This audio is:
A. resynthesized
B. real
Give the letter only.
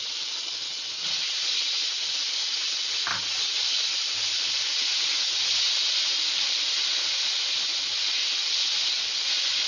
B